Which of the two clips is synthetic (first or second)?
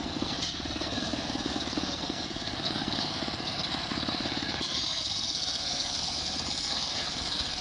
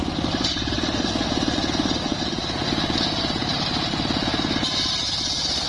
first